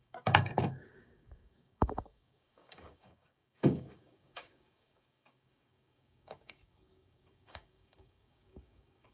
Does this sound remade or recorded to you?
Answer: remade